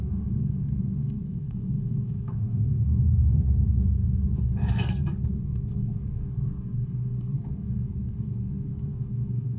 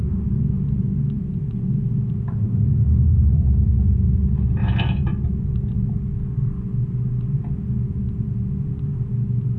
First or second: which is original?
second